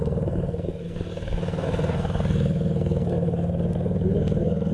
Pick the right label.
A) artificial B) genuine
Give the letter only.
A